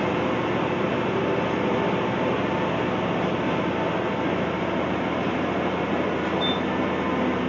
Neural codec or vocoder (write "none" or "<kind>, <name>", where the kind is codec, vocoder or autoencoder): none